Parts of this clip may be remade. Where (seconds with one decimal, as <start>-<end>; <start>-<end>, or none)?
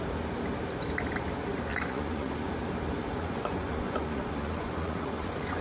1.7-2.5; 3.0-5.6